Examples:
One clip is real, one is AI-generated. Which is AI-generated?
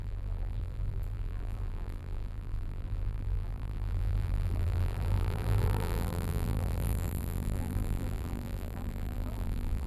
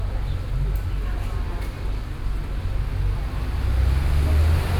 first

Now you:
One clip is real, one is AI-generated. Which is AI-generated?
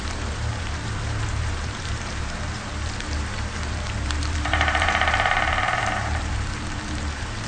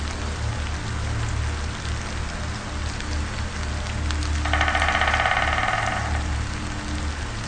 first